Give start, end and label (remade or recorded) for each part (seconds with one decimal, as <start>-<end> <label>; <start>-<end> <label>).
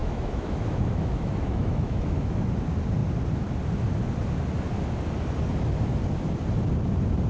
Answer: 0.0-2.5 remade; 2.5-7.3 recorded